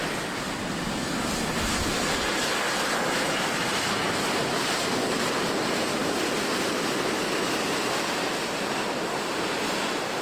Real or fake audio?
real